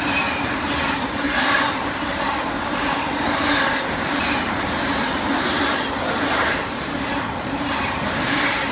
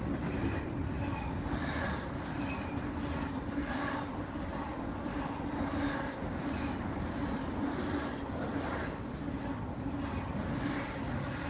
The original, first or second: second